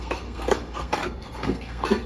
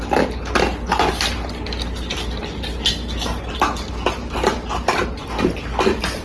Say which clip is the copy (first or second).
first